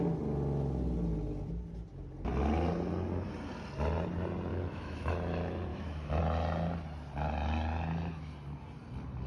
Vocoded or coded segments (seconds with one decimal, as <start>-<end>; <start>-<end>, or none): 4.5-5.1; 5.7-6.2